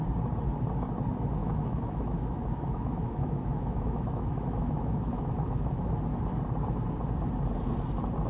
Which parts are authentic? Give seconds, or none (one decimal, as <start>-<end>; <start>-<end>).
0.0-1.4; 5.9-8.3